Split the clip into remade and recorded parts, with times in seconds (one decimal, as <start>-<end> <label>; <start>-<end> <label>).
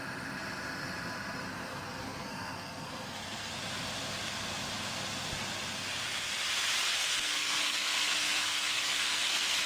0.0-1.5 recorded; 1.5-3.5 remade; 3.5-7.0 recorded; 7.0-9.7 remade